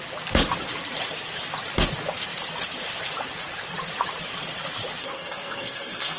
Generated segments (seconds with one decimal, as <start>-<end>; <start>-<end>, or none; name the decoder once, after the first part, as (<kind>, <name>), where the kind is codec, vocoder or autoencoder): 5.0-6.2 (codec, SNAC)